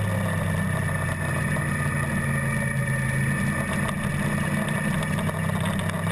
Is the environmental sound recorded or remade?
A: recorded